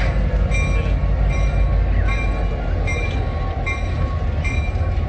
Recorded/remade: recorded